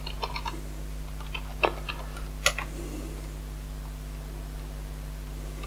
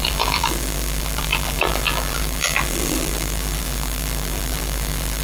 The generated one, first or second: second